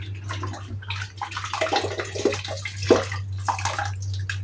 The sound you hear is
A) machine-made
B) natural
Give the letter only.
B